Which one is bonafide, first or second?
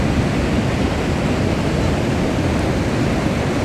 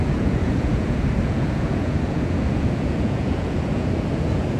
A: first